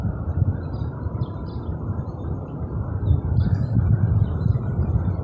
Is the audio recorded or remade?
recorded